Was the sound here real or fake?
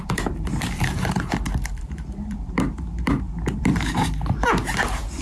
fake